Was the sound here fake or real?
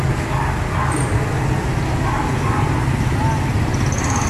real